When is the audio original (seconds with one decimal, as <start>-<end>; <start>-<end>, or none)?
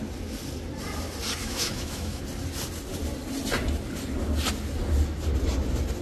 0.0-1.4; 2.2-6.0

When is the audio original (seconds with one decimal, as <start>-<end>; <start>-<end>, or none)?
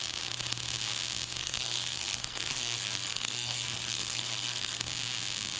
0.0-1.4; 4.8-5.6